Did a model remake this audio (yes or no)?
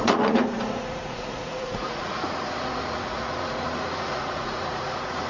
yes